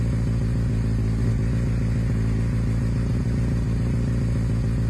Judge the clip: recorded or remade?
recorded